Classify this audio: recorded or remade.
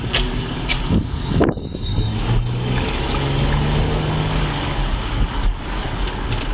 remade